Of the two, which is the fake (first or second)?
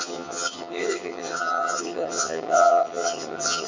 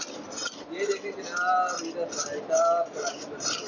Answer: first